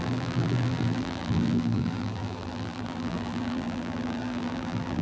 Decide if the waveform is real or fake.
fake